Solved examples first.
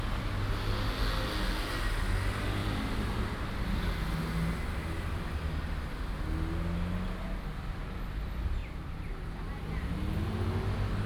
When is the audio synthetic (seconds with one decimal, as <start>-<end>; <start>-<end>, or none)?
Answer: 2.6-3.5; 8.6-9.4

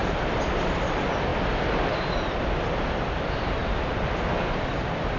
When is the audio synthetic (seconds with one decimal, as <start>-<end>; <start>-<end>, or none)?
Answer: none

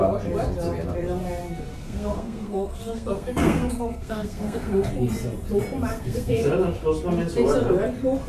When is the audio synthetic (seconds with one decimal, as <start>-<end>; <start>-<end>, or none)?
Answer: 1.7-4.9; 5.9-6.5

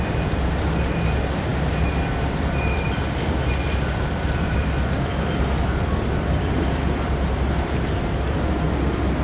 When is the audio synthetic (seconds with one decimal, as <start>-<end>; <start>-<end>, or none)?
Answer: 0.0-9.2

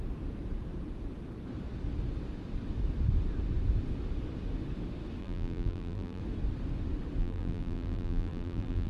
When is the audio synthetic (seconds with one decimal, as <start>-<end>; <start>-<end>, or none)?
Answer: 5.2-6.2; 7.2-8.9

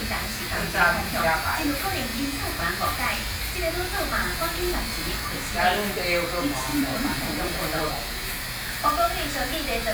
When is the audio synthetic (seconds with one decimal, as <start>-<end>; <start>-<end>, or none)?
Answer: 6.7-7.9